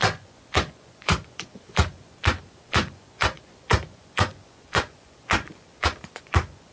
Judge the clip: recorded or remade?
remade